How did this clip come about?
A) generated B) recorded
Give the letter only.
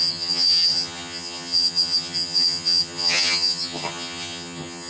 A